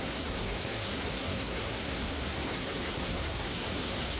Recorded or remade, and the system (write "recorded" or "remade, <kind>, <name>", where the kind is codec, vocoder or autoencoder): remade, codec, SNAC